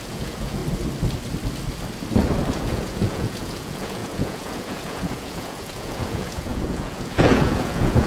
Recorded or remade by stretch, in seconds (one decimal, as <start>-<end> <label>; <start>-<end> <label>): 0.0-0.6 remade; 0.6-2.5 recorded; 2.5-8.1 remade